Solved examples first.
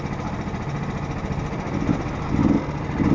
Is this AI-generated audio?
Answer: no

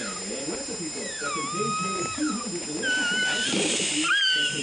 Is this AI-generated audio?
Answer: no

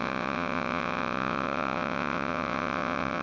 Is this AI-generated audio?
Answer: yes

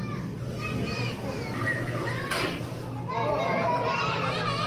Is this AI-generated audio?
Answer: no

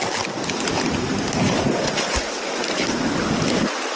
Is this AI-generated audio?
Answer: no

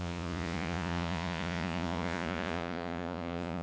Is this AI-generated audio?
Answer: yes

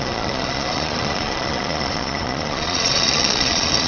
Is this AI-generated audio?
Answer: yes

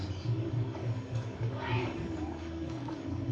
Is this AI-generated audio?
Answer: yes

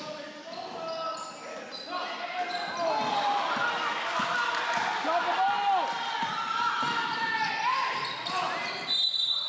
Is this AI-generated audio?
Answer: no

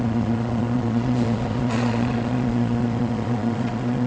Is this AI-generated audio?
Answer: yes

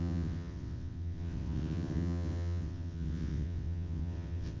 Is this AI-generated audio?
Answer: yes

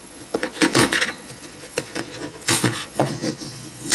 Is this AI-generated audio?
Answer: yes